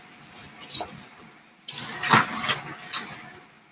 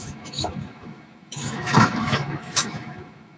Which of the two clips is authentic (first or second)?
first